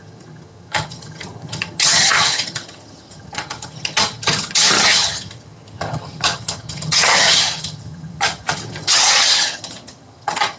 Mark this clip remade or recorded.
remade